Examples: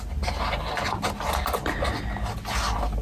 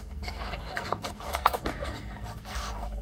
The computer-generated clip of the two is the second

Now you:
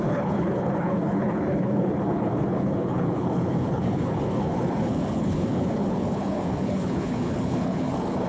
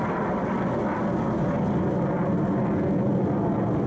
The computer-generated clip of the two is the first